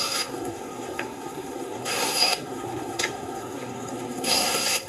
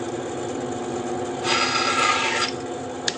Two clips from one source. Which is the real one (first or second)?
second